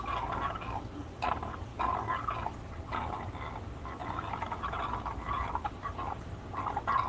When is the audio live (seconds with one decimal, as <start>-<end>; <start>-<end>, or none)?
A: 0.0-7.1